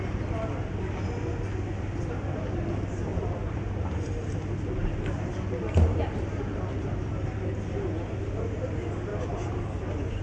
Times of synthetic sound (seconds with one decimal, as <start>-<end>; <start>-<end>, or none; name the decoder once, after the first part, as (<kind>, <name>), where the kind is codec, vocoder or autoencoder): 3.1-4.2 (vocoder, BigVGAN v2); 9.1-10.2